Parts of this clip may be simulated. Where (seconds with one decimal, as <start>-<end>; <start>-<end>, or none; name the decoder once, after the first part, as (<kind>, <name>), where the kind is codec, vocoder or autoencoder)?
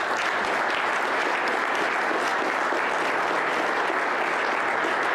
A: none